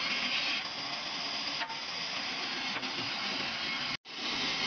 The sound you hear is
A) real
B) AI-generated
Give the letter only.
A